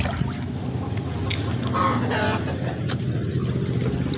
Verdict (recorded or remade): recorded